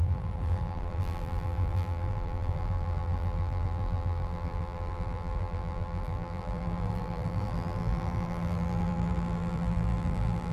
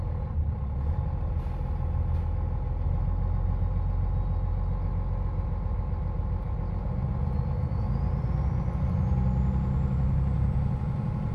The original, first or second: second